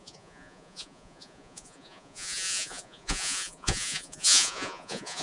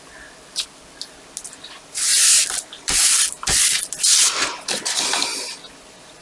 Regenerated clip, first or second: first